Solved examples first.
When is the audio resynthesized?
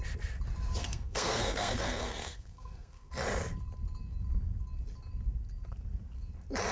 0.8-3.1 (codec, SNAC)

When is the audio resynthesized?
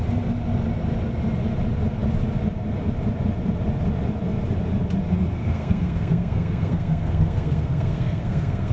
5.4-8.7 (codec, SNAC)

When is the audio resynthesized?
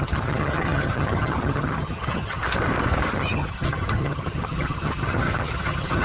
0.0-2.4 (vocoder, HiFi-GAN); 3.1-6.0